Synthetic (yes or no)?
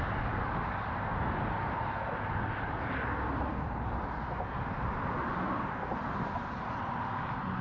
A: no